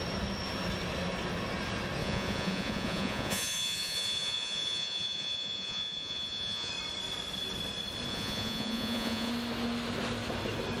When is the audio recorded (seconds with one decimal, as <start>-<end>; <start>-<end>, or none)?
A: 0.0-2.0; 6.7-8.1; 9.3-10.8